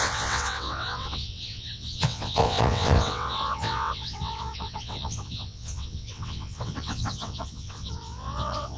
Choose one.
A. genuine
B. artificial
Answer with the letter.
B